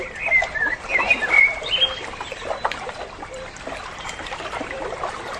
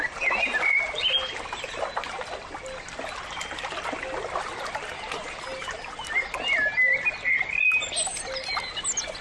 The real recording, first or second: second